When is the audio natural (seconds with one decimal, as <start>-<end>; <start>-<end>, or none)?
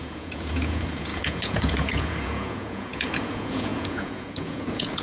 none